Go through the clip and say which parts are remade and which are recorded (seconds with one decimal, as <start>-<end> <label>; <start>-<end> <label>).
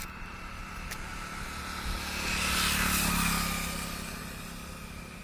0.0-5.2 recorded